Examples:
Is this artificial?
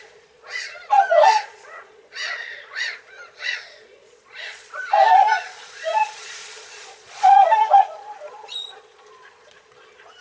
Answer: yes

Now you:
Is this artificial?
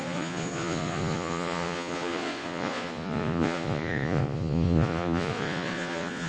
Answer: yes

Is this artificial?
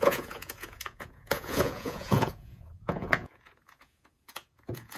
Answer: yes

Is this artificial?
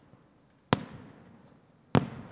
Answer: no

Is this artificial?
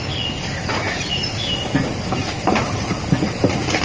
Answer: no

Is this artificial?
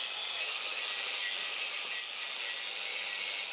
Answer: no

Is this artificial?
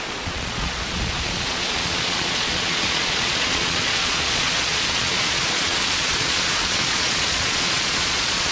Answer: yes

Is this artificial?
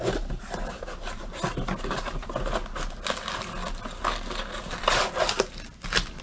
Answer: no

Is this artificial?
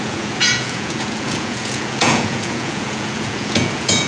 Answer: yes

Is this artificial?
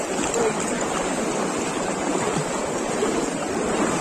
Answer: no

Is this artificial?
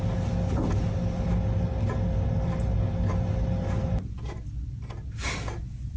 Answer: no